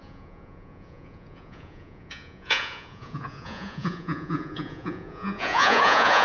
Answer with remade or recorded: remade